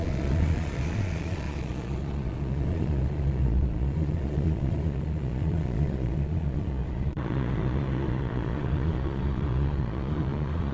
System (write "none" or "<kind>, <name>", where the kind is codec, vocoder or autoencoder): vocoder, Vocos